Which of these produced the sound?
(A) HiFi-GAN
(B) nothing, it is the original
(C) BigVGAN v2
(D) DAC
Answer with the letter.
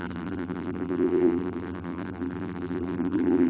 C